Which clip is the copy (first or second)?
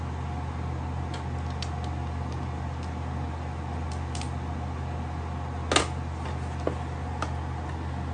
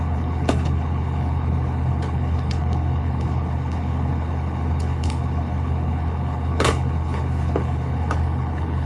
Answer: second